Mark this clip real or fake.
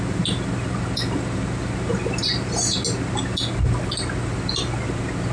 real